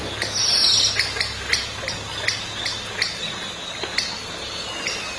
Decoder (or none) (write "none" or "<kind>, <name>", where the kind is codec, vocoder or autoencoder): none